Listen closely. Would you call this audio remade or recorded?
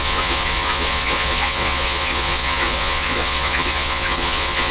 remade